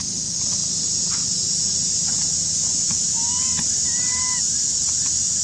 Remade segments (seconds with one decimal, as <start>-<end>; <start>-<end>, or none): none